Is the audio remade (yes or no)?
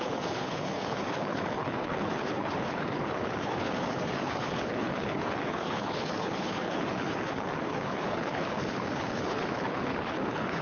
yes